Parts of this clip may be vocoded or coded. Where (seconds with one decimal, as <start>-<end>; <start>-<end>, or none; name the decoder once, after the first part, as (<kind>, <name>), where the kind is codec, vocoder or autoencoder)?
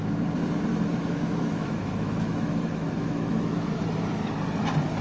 0.7-3.7 (autoencoder, DAC-VAE)